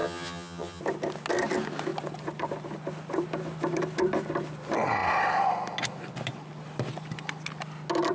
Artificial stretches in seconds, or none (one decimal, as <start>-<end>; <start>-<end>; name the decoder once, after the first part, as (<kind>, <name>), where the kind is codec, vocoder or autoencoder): 0.0-0.8 (vocoder, HiFi-GAN)